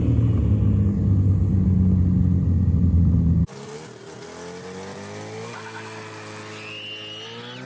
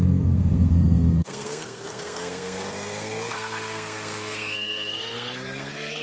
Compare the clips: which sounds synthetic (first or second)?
second